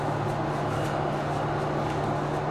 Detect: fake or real real